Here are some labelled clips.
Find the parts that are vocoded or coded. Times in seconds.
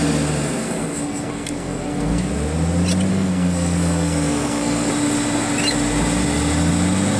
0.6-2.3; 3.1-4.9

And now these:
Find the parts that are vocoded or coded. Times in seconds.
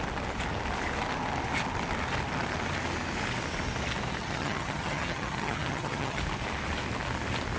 4.2-6.2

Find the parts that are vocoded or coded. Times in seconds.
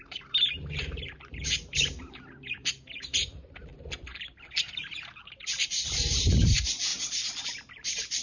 0.0-3.7; 4.6-6.9; 7.4-8.2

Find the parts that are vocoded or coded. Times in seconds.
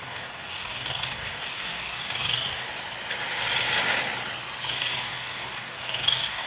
0.0-2.7; 4.7-6.5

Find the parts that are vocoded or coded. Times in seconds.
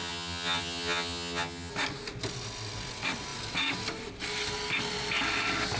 0.0-1.7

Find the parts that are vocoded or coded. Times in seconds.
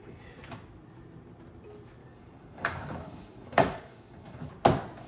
2.0-4.5